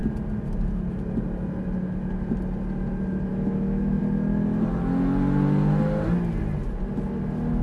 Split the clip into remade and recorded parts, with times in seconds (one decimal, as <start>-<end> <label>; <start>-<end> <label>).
0.0-3.3 recorded; 3.3-4.0 remade; 4.0-7.6 recorded